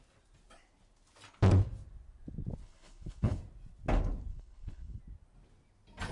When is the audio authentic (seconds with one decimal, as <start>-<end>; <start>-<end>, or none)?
0.0-2.6; 3.4-4.3; 5.0-6.1